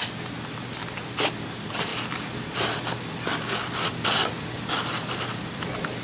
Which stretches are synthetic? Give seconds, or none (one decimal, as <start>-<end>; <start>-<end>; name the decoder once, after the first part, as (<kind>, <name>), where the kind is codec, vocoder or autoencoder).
0.0-0.8 (vocoder, BigVGAN v2); 1.5-6.0